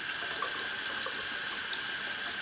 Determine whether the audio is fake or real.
real